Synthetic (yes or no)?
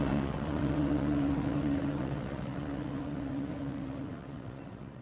yes